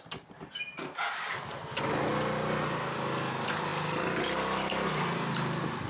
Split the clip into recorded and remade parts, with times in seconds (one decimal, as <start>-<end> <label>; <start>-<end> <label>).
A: 0.0-5.9 recorded